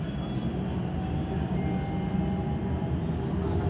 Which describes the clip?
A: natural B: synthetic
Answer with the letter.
A